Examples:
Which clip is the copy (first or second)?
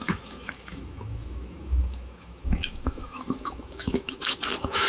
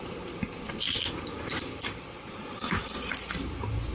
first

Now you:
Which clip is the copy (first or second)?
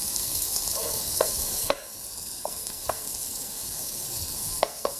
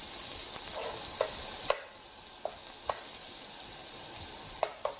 first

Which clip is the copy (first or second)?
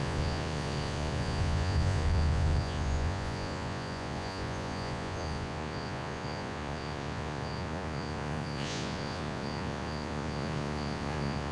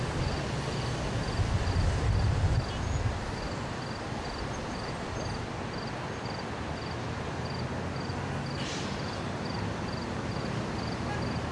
first